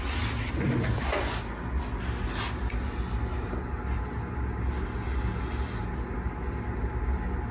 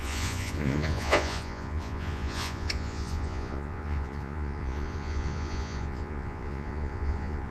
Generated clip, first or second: second